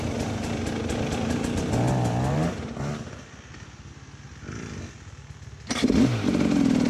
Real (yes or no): yes